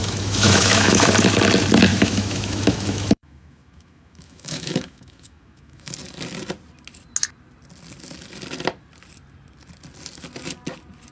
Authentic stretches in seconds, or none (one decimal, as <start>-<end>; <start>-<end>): 1.1-1.9; 5.9-11.1